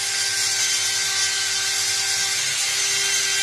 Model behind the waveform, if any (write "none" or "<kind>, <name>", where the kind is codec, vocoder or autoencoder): none